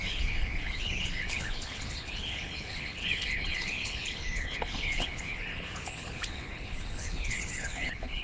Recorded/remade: remade